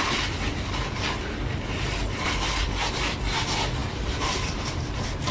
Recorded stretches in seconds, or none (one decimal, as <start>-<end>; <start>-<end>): 0.0-5.3